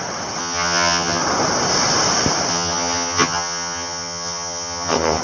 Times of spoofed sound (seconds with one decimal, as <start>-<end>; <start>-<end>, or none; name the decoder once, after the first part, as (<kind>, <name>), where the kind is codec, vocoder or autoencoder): 0.4-1.2 (vocoder, HiFi-GAN); 2.5-5.2